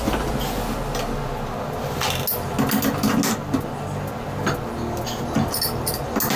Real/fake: real